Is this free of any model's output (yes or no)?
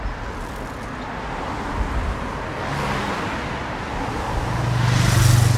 yes